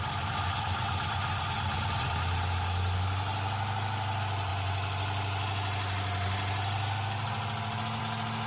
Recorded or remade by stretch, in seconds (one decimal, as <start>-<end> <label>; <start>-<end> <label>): 0.0-8.5 recorded